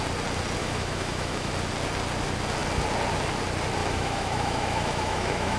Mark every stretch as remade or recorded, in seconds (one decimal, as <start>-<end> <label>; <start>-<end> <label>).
0.0-0.6 recorded; 0.6-1.5 remade; 1.5-3.8 recorded; 3.8-5.6 remade